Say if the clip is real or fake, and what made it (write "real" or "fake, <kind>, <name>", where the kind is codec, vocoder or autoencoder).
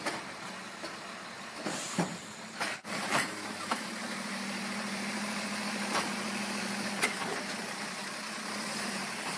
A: fake, vocoder, BigVGAN v2